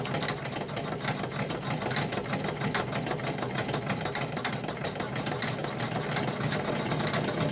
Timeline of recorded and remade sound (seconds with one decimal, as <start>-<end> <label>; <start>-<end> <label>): 0.0-7.5 recorded